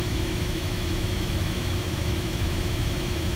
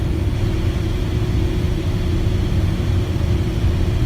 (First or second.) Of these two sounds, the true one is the second